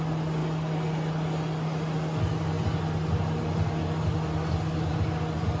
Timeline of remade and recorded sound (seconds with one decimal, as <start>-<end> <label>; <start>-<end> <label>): 0.0-5.6 recorded